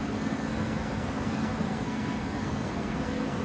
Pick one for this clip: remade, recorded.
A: remade